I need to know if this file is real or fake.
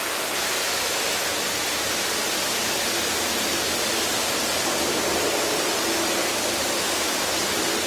real